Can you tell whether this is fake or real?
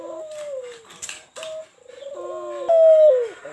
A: real